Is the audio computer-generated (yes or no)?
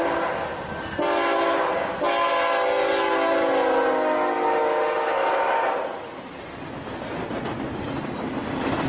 no